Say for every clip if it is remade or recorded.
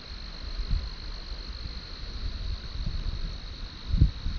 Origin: recorded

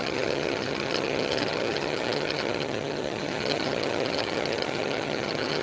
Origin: remade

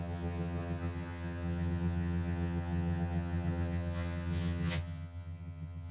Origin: remade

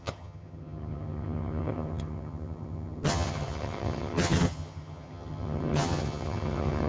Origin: remade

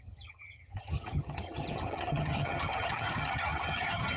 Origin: remade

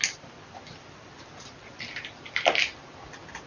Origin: recorded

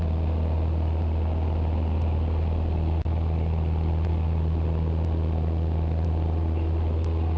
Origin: recorded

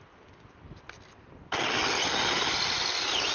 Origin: recorded